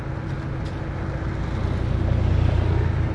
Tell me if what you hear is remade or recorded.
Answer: recorded